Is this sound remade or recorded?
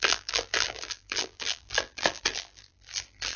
remade